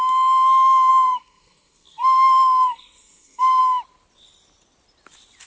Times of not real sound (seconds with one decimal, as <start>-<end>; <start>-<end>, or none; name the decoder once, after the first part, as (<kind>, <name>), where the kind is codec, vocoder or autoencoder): 0.9-3.6 (codec, SNAC)